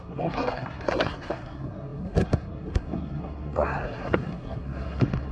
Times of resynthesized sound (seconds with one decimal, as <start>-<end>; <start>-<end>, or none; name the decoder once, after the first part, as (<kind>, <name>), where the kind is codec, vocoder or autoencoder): 0.0-5.3 (codec, SNAC)